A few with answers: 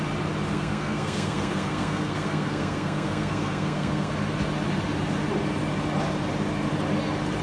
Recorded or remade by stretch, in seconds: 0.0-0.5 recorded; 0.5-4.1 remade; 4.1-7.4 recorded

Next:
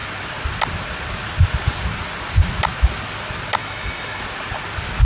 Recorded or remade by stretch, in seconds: 0.0-3.6 recorded; 3.6-4.2 remade; 4.2-5.0 recorded